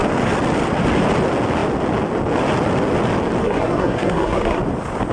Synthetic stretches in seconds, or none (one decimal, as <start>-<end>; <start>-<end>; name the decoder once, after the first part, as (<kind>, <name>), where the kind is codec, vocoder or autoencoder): 3.4-4.6 (codec, SNAC)